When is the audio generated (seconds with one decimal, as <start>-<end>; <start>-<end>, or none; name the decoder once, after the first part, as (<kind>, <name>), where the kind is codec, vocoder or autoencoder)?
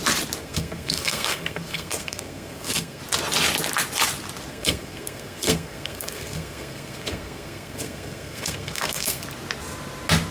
0.4-3.0 (codec, SNAC); 4.5-9.2